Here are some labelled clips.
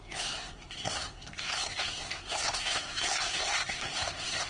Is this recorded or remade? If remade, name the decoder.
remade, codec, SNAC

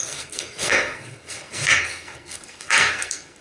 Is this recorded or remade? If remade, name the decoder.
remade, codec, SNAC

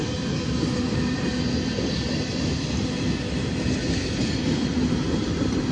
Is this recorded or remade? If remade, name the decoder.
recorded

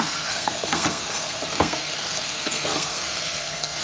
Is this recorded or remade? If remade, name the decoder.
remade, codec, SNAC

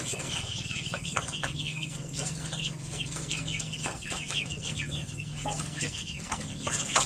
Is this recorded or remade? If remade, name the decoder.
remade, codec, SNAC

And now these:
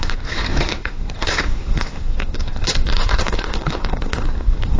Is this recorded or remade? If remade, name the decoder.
remade, codec, SNAC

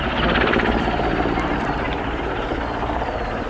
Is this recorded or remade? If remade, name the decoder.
recorded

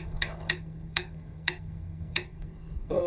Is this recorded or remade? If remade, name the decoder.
remade, codec, SNAC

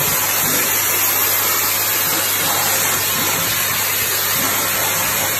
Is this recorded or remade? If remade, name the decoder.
recorded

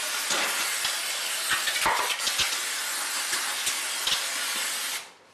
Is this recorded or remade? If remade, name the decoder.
recorded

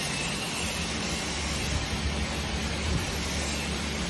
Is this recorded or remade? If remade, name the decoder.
recorded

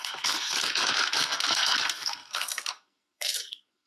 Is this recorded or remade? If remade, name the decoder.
remade, codec, SNAC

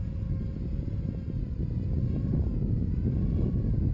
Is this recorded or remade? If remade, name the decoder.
recorded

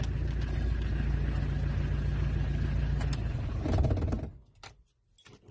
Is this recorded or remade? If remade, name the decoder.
recorded